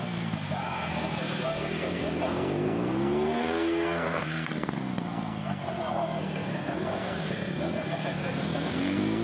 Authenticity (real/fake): fake